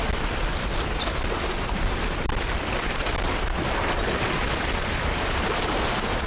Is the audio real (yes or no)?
yes